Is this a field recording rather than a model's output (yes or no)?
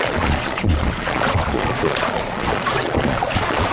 no